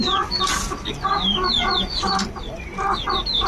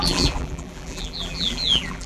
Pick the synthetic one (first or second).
second